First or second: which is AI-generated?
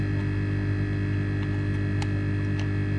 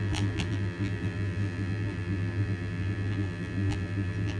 second